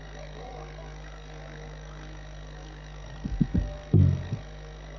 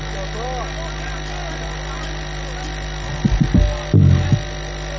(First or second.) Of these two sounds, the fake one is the first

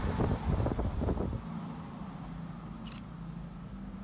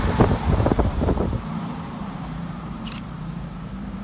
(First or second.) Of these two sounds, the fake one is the second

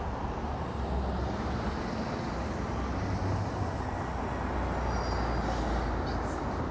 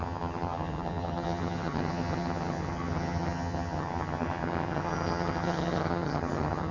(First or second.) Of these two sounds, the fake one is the second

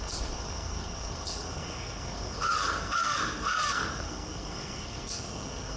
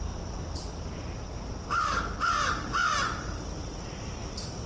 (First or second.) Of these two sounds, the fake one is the first